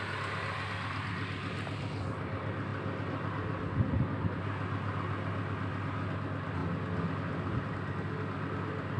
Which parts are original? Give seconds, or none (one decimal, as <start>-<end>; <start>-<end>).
0.0-9.0